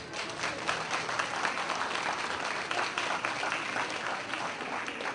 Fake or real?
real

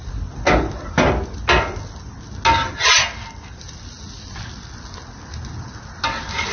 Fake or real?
real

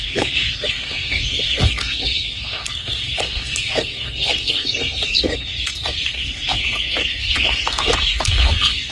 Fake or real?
fake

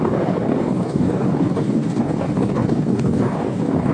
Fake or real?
fake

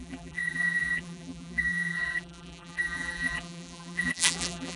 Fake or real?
fake